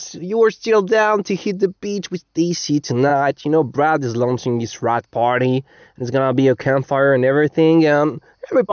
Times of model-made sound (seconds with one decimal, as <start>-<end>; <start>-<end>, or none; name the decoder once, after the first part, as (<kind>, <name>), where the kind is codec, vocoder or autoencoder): none